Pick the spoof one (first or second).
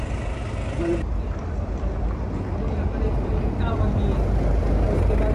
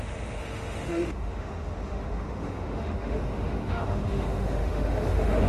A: second